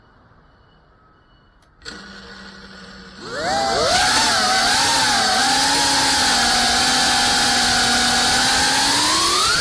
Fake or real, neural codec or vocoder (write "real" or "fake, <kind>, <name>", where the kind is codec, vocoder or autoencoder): real